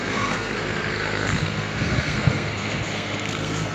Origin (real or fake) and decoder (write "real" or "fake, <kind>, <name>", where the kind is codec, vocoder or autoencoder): fake, codec, SNAC